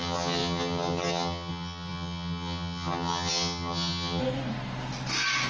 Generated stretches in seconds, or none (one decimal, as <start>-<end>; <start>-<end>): 0.0-4.2

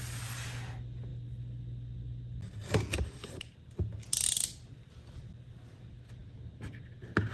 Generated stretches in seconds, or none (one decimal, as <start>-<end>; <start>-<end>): none

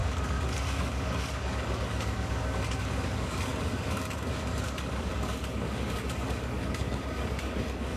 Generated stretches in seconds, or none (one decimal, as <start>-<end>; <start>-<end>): 0.0-8.0